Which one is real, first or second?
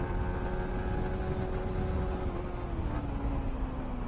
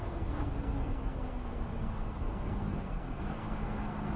first